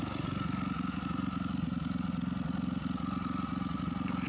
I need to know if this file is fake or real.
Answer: real